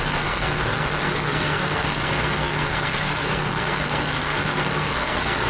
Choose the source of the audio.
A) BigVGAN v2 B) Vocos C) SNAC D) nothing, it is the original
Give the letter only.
C